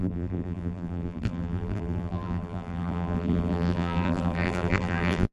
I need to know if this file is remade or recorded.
remade